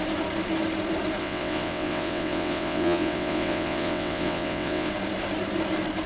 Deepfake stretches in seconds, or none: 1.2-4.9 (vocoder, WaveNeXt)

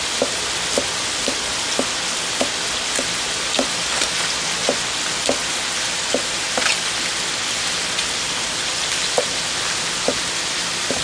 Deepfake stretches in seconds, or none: none

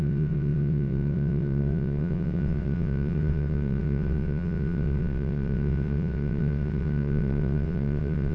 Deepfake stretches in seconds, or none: 0.0-8.3 (vocoder, WaveNeXt)

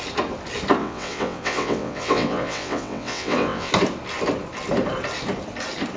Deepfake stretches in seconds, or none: 0.8-3.7 (vocoder, WaveNeXt)

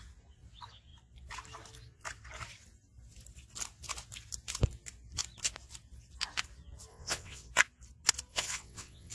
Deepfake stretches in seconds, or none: 6.9-7.5 (vocoder, WaveNeXt); 8.3-9.1